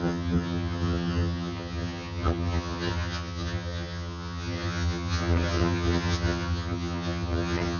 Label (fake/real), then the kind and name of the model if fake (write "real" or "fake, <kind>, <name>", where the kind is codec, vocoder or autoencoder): fake, vocoder, HiFi-GAN